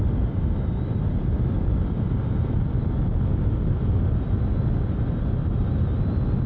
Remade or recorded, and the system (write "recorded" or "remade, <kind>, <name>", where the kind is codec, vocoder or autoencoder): recorded